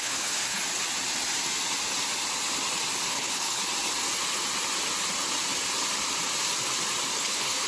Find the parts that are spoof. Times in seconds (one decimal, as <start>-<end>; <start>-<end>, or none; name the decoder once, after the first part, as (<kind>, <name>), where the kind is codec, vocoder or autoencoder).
0.0-0.6 (codec, HILCodec); 3.1-3.6; 7.2-7.7